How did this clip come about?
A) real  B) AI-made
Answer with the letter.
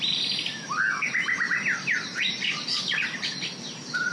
A